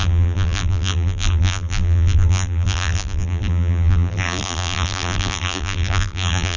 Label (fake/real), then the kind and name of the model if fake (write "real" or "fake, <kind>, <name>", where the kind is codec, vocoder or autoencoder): fake, vocoder, BigVGAN v2